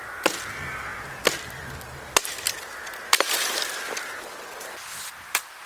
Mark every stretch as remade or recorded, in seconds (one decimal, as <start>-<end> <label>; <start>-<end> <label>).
0.0-5.7 recorded